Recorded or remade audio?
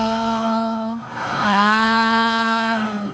remade